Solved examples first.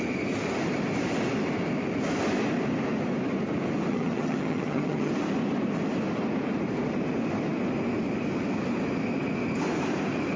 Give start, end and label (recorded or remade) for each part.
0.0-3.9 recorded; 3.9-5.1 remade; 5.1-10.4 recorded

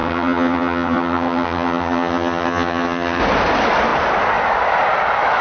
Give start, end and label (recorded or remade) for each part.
0.0-3.2 remade; 3.2-5.4 recorded

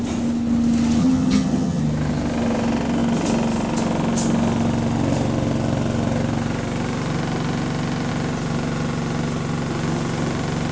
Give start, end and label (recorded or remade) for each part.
0.0-1.0 recorded; 1.0-1.8 remade; 1.8-10.7 recorded

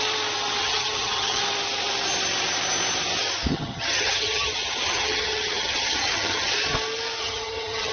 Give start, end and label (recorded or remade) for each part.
0.0-0.6 recorded; 0.6-1.4 remade; 1.4-3.5 recorded; 3.5-6.5 remade; 6.5-7.2 recorded; 7.2-7.9 remade

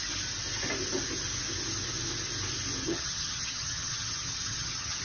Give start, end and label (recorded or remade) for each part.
0.0-2.8 recorded; 2.8-5.0 remade

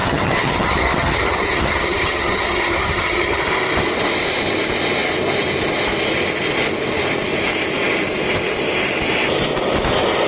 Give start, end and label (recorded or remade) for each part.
0.0-3.4 remade; 3.4-10.3 recorded

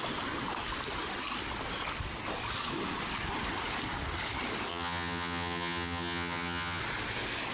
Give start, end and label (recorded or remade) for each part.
0.0-4.7 recorded; 4.7-6.8 remade; 6.8-7.5 recorded

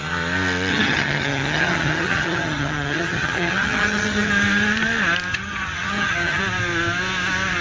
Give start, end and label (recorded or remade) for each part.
0.0-0.7 recorded; 0.7-4.3 remade; 4.3-5.3 recorded; 5.3-6.4 remade; 6.4-7.6 recorded